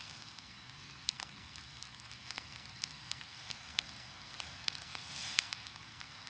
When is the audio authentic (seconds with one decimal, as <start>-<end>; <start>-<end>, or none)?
none